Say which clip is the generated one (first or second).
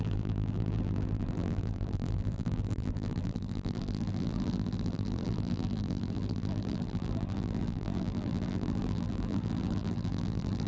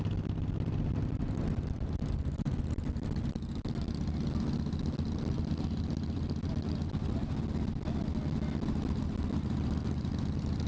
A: first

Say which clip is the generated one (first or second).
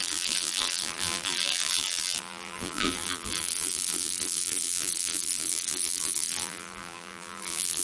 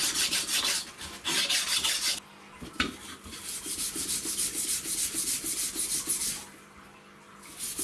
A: first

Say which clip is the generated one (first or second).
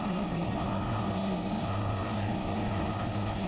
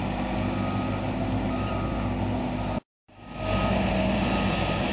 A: first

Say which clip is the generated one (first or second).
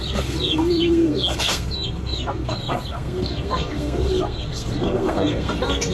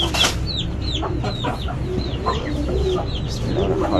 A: first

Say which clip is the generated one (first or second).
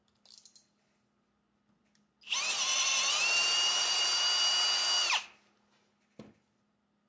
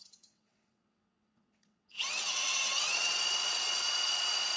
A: second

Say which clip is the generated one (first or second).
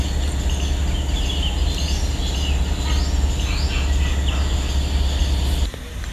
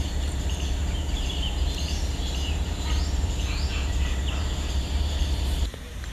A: second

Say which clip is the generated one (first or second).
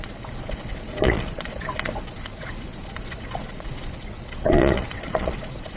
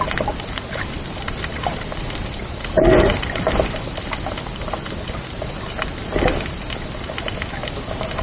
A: first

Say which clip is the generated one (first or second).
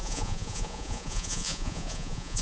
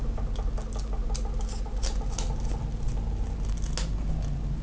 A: first